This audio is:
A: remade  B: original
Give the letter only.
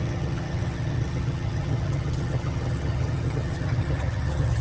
A